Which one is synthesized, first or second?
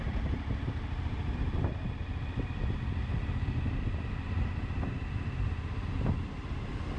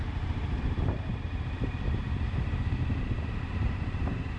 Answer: second